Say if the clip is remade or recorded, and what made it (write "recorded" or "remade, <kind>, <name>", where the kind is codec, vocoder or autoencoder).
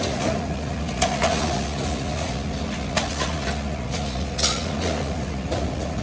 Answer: remade, vocoder, Vocos